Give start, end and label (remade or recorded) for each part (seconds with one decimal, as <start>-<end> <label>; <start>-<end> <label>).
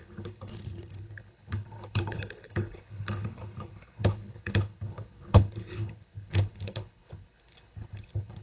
0.0-8.4 remade